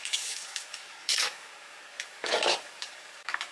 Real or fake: fake